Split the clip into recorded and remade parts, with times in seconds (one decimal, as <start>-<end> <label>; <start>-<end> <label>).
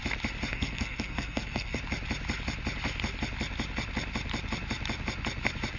0.0-0.5 recorded; 0.5-1.8 remade; 1.8-5.8 recorded